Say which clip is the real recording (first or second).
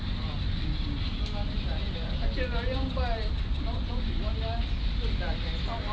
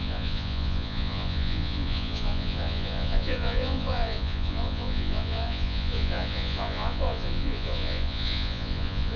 first